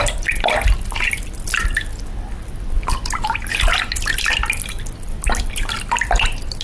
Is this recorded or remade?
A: recorded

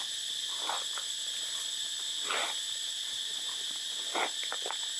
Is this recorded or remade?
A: recorded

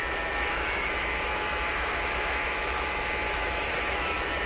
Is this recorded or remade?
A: remade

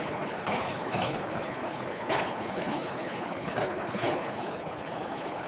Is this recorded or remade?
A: remade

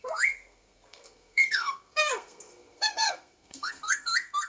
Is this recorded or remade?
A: remade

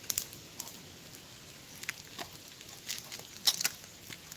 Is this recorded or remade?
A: recorded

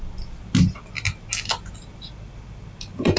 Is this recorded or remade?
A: recorded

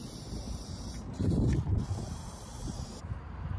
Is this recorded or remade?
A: remade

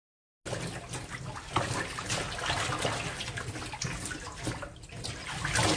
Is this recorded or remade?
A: recorded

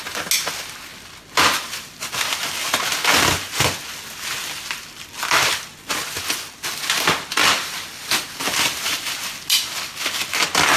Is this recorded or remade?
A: recorded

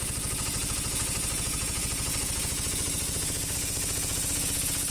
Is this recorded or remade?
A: remade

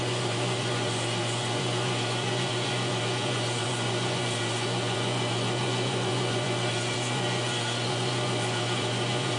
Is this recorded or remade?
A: remade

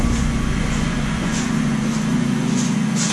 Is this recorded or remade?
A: remade